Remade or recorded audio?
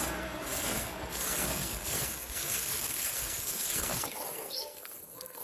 remade